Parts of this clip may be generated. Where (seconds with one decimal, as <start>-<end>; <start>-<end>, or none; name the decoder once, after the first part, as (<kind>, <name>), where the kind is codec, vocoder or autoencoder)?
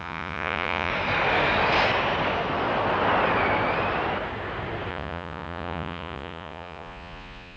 0.0-0.9 (vocoder, Vocos); 4.9-7.6